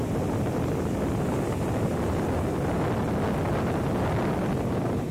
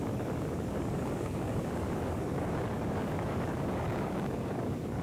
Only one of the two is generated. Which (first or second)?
second